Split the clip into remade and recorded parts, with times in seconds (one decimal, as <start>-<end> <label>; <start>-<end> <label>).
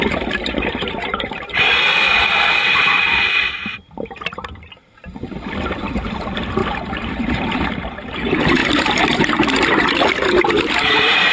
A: 0.0-0.5 recorded; 0.5-1.9 remade; 1.9-5.8 recorded; 5.8-8.6 remade; 8.6-10.5 recorded; 10.5-11.3 remade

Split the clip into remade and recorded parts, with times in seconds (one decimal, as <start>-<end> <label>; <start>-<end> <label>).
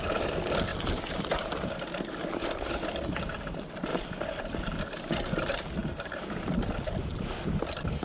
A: 0.0-0.7 recorded; 0.7-2.3 remade; 2.3-3.9 recorded; 3.9-4.8 remade; 4.8-5.8 recorded; 5.8-6.4 remade; 6.4-8.0 recorded